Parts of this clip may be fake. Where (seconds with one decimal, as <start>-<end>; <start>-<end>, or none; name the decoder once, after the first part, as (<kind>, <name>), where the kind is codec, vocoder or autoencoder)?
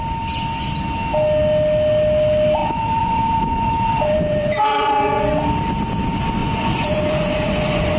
2.6-5.2 (vocoder, Vocos); 6.4-8.0